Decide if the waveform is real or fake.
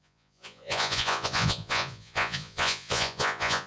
fake